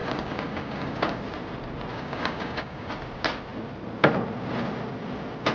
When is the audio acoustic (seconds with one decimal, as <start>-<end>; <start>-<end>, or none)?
1.2-1.9; 2.9-5.5